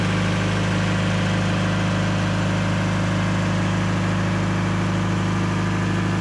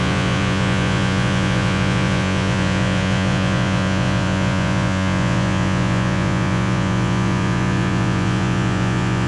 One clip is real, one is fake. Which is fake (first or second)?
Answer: second